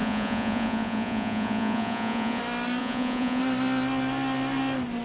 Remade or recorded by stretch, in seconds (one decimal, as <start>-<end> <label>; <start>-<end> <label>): 0.0-2.4 remade; 2.4-2.8 recorded; 2.8-3.4 remade; 3.4-5.0 recorded